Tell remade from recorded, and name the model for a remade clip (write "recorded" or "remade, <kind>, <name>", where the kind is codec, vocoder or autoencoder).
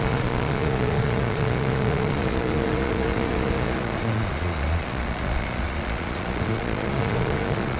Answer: remade, vocoder, Vocos